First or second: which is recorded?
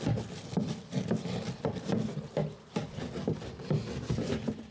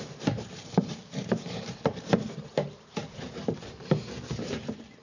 first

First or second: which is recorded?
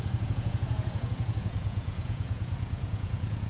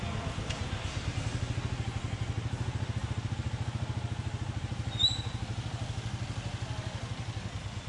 second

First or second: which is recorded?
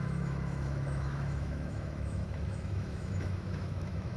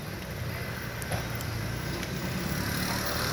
second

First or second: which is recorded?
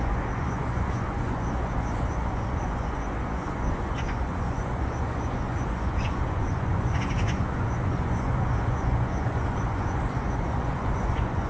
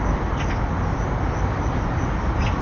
second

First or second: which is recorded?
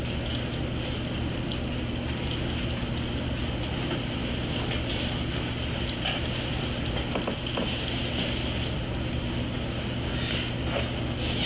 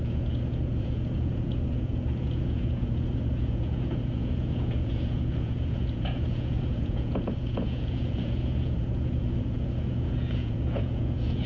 first